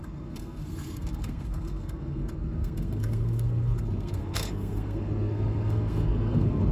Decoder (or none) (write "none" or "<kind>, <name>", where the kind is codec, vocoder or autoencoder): codec, SNAC